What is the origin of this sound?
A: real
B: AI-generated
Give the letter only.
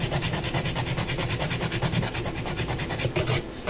A